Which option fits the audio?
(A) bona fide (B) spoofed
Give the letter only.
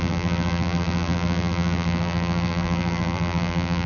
B